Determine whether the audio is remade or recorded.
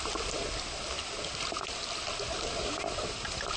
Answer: recorded